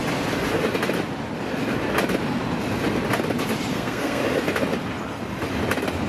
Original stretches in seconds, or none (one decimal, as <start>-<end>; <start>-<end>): 0.0-3.7; 4.2-6.1